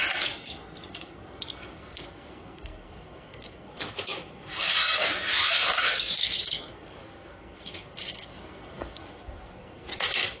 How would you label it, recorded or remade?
remade